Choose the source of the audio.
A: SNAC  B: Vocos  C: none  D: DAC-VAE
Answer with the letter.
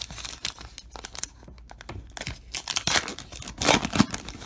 C